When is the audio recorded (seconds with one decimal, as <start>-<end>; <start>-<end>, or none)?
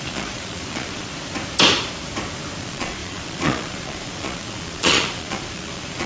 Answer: 1.1-2.6